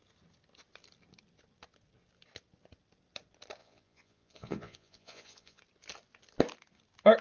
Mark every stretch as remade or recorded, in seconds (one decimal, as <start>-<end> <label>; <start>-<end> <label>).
0.0-3.6 recorded; 3.6-5.6 remade; 5.6-7.2 recorded